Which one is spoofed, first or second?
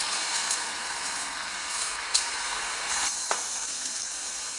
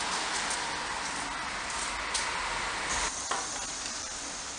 first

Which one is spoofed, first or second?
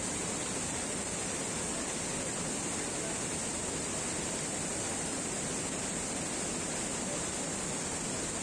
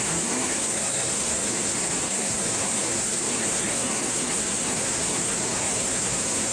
second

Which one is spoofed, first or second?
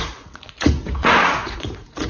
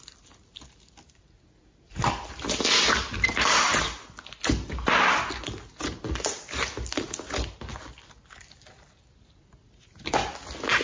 first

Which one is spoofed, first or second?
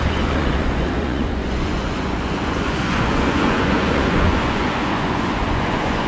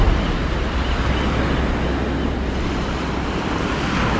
first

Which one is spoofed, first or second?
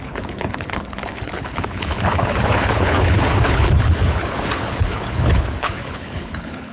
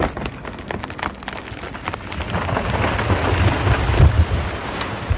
first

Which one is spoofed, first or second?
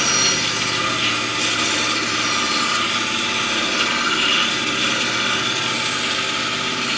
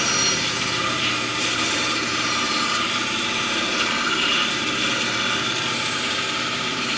second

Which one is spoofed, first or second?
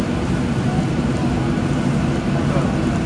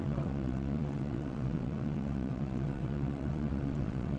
second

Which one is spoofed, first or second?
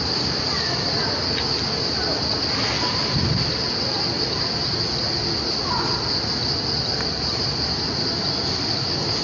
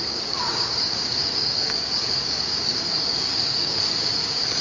second